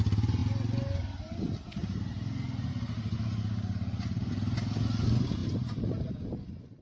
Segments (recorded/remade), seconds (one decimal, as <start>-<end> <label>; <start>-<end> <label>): 0.0-5.4 recorded; 5.4-6.1 remade; 6.1-6.8 recorded